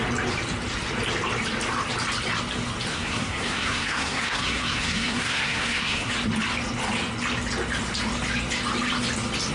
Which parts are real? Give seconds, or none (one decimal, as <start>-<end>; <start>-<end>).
0.0-2.9; 6.1-9.5